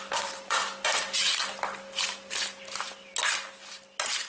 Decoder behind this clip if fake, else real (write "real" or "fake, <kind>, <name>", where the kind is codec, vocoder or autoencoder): real